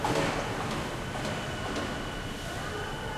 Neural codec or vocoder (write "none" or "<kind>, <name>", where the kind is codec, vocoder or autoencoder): none